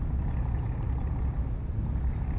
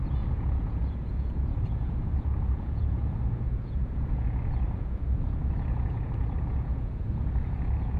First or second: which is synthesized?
second